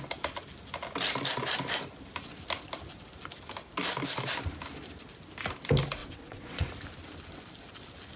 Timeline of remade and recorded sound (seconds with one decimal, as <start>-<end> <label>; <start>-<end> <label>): 0.0-6.0 recorded; 6.0-6.7 remade; 6.7-8.2 recorded